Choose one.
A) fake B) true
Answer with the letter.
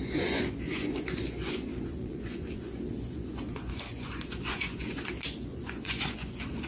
A